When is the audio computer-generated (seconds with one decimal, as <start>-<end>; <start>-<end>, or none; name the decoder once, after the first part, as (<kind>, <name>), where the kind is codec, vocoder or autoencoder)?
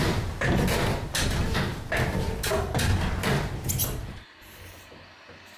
none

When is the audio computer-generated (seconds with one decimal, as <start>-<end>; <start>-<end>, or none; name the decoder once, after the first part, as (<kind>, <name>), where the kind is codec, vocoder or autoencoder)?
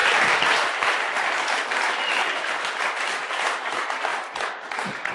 none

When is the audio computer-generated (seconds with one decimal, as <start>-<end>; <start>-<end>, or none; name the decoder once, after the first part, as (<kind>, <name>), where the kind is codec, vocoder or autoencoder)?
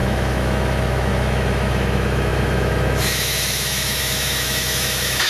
0.0-5.3 (autoencoder, DAC-VAE)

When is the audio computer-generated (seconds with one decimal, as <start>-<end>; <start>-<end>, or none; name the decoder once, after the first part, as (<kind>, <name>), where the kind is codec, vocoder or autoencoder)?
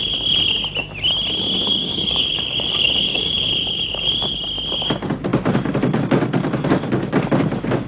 1.7-3.5 (codec, DAC)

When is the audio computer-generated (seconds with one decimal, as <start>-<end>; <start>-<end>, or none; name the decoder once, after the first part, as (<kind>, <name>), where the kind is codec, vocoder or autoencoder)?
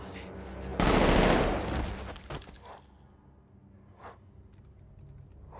none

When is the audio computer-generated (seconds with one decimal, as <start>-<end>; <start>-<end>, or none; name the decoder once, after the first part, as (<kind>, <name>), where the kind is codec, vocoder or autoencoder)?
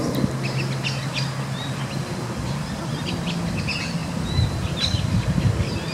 1.6-3.5 (vocoder, BigVGAN v2); 4.0-5.5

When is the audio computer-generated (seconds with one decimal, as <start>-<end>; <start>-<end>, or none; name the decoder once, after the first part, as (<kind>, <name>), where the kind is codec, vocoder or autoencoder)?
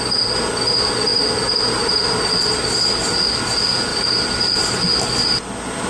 none